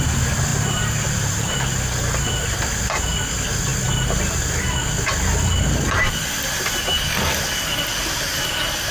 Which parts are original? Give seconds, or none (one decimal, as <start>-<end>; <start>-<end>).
0.0-0.5; 1.5-8.9